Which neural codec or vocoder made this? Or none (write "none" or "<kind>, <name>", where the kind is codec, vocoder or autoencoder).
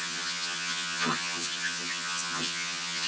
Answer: vocoder, HiFi-GAN